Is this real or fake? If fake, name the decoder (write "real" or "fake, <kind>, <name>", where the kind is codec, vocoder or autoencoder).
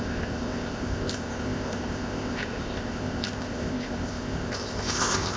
fake, codec, ZipCodec